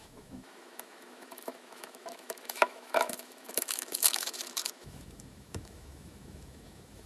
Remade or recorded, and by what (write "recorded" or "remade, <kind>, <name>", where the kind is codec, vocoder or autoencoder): remade, autoencoder, DAC-VAE